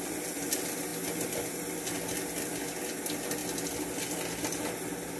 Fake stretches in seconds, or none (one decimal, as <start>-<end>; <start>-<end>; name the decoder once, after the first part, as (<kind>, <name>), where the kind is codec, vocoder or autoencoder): none